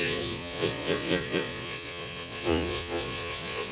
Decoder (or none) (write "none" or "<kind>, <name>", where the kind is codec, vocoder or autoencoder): vocoder, Vocos